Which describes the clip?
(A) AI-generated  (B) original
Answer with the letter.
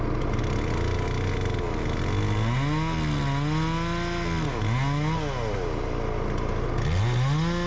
B